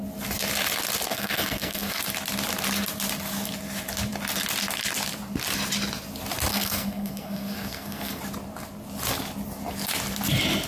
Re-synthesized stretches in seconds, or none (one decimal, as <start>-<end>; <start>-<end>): 1.1-2.0; 6.5-8.2